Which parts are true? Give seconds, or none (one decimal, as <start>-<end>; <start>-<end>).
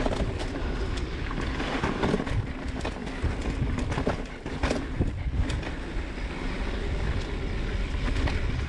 0.0-8.7